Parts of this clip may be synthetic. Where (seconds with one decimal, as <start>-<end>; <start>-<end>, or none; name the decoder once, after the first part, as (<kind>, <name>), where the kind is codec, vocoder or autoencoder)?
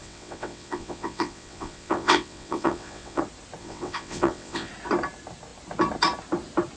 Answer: 0.0-3.2 (vocoder, WaveNeXt); 3.6-4.7